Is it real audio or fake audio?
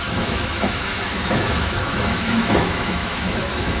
fake